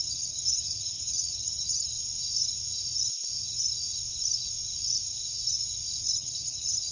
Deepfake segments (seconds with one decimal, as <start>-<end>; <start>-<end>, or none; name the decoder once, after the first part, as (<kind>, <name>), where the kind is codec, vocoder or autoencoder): 0.0-1.9 (vocoder, HiFi-GAN); 6.0-6.9